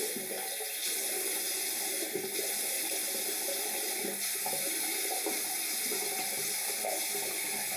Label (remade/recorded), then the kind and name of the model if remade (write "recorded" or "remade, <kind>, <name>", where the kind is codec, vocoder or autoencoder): recorded